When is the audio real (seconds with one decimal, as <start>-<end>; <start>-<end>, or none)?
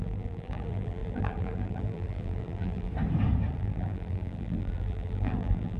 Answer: 2.9-3.5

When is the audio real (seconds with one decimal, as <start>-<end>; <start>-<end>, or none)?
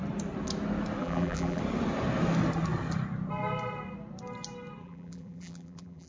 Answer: 0.0-1.0; 1.6-4.8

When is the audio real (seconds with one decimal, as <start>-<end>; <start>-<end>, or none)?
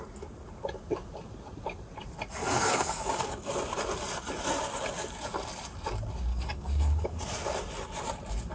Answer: 0.0-2.4; 3.5-6.3; 7.2-8.5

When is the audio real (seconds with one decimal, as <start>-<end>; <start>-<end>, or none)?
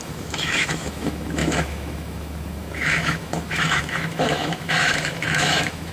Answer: none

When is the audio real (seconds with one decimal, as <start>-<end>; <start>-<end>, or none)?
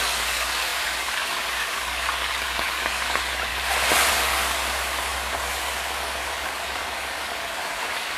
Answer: 3.5-4.1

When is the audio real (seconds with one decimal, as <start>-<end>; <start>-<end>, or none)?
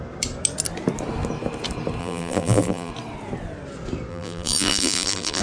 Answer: 0.0-2.0; 2.9-4.1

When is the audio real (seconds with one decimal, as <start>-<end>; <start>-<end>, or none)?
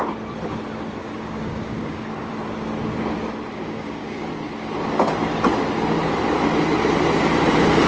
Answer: 0.0-1.0; 2.3-3.5; 4.3-7.9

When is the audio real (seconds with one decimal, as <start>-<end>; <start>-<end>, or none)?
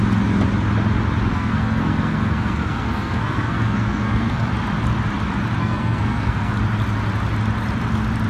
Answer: 0.0-1.3; 4.5-5.6; 6.5-8.3